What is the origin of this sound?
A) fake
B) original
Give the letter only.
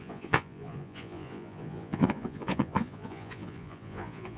A